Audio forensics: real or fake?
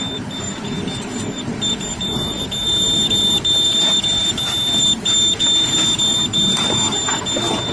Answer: fake